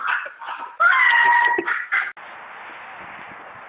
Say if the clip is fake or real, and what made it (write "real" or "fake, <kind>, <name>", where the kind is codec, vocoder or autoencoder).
real